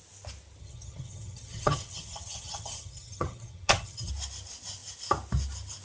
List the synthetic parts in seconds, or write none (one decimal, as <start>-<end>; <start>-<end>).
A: 0.6-4.1